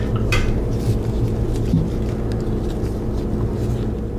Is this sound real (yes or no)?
yes